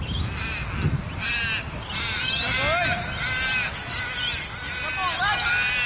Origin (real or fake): real